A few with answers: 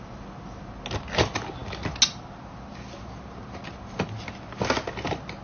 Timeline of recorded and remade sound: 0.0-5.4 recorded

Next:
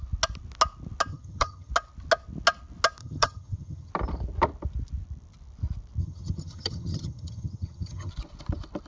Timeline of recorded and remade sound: 0.0-1.1 recorded; 1.1-1.7 remade; 1.7-3.0 recorded; 3.0-3.9 remade; 3.9-6.0 recorded; 6.0-8.1 remade; 8.1-8.9 recorded